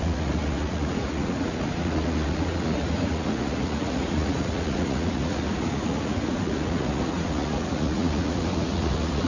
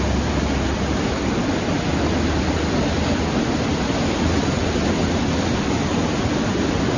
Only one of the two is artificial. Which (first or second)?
first